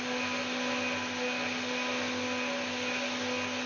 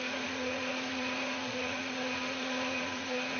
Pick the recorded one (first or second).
first